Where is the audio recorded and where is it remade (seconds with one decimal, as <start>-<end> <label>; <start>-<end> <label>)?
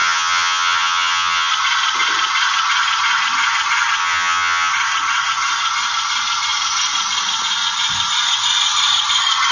0.0-1.5 remade; 1.5-4.0 recorded; 4.0-4.7 remade; 4.7-9.5 recorded